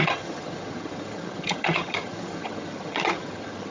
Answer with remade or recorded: remade